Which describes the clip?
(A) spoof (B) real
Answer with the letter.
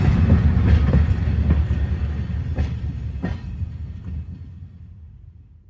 B